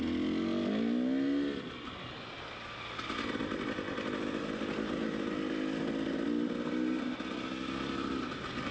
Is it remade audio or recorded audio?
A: recorded